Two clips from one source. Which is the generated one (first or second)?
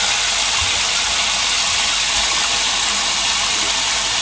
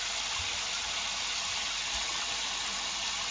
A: first